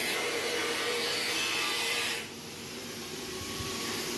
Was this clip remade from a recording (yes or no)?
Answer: yes